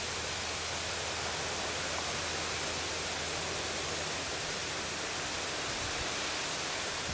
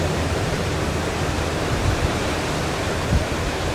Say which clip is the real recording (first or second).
first